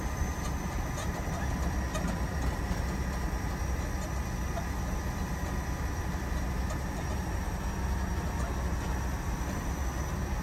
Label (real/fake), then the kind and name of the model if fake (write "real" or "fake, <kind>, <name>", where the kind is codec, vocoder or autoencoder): real